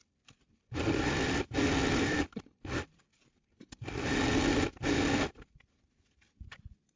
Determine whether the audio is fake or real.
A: real